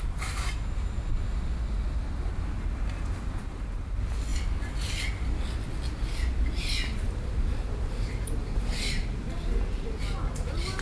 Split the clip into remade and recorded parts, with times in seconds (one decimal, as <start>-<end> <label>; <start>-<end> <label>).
0.0-10.8 recorded